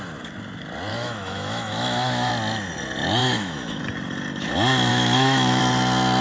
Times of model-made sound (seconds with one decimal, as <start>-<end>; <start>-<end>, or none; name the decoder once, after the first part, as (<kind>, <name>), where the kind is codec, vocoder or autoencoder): 0.9-2.3 (autoencoder, DAC-VAE); 3.2-3.8; 4.9-5.6